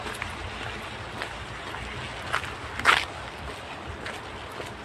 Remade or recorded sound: recorded